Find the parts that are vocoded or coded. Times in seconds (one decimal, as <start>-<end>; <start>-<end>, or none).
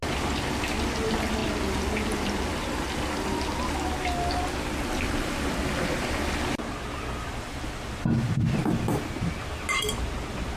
none